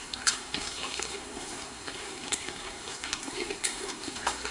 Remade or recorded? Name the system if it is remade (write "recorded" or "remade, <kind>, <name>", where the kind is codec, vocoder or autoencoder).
remade, codec, SNAC